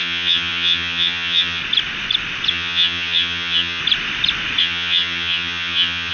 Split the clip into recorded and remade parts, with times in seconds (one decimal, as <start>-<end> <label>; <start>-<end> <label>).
0.0-1.6 remade; 1.6-2.5 recorded; 2.5-3.8 remade; 3.8-4.6 recorded; 4.6-6.1 remade